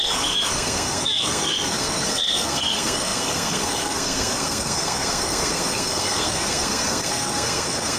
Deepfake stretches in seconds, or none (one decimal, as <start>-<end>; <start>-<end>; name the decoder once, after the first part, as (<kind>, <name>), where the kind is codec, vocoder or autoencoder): 0.0-8.0 (codec, SNAC)